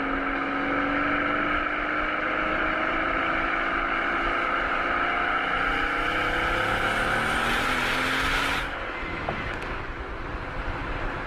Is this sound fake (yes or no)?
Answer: no